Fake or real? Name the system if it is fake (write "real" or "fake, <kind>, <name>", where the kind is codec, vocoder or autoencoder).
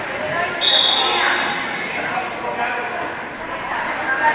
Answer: real